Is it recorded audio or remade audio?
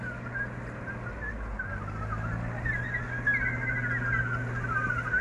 recorded